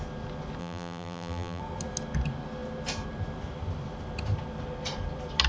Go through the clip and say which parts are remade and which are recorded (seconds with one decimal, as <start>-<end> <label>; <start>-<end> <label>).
0.0-0.6 recorded; 0.6-1.6 remade; 1.6-5.5 recorded